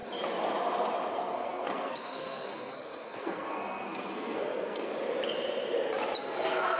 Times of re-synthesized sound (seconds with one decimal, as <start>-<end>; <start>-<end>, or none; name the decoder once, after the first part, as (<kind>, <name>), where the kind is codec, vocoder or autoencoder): 1.1-4.9 (codec, SNAC); 6.2-6.8